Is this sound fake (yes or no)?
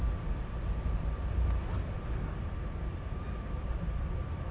no